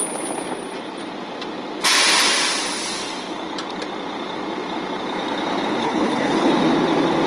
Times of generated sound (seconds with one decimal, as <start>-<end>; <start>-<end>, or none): 5.8-6.5